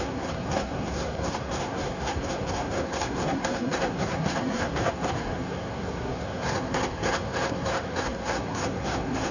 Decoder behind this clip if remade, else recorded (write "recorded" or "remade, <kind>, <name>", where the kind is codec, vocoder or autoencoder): remade, codec, SNAC